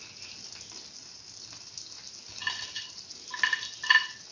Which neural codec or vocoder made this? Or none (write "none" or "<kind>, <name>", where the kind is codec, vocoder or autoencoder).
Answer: none